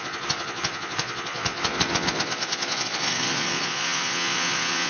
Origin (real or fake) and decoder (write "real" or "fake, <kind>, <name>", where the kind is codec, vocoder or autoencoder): fake, vocoder, Vocos